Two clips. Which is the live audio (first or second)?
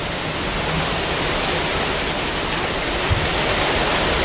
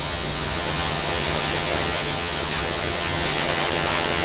first